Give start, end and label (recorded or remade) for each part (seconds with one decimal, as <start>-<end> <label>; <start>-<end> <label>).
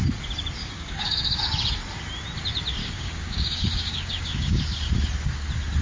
0.0-0.6 recorded; 0.6-1.4 remade; 1.4-2.8 recorded; 2.8-4.6 remade; 4.6-5.8 recorded